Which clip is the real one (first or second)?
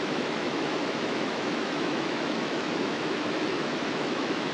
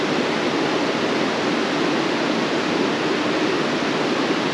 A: second